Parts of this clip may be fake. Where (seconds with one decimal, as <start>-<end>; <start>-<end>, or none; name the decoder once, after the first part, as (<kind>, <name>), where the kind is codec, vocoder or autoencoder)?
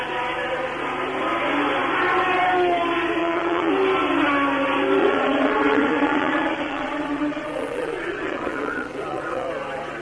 3.2-3.7 (vocoder, Vocos); 5.0-9.5